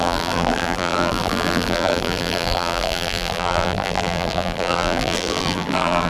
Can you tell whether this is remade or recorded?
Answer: remade